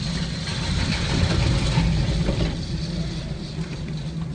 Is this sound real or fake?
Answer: real